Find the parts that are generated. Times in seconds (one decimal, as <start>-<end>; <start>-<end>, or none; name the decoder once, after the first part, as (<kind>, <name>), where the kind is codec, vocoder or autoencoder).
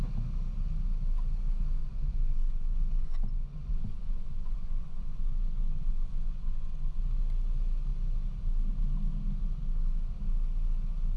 1.8-7.0 (vocoder, Vocos)